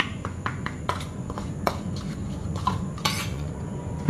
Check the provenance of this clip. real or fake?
fake